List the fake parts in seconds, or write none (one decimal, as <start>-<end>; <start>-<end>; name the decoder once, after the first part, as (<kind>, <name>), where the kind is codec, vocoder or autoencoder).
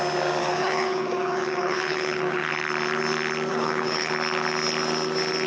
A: 0.4-2.5 (codec, HILCodec); 3.5-4.1